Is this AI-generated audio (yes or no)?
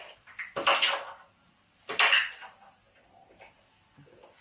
no